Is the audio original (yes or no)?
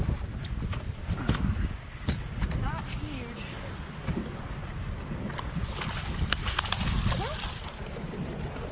yes